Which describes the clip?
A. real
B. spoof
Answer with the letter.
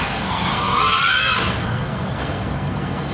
B